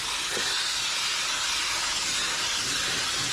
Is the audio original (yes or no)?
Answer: yes